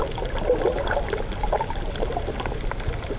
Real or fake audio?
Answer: real